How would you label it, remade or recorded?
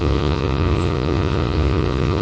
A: remade